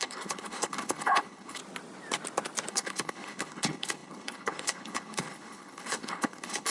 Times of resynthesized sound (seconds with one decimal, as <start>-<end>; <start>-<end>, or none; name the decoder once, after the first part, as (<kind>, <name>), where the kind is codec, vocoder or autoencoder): 0.0-1.6 (codec, HILCodec); 2.7-6.7